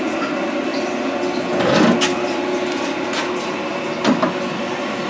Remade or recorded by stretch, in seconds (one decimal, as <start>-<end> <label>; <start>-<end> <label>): 0.0-5.1 recorded